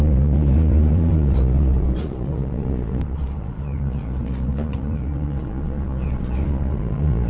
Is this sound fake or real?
fake